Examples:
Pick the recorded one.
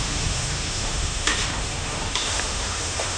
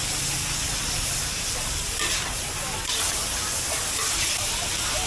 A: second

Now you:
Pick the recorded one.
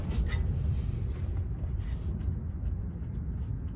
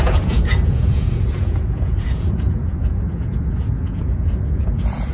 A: first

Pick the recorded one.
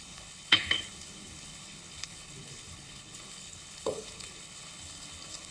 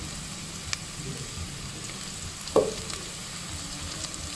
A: second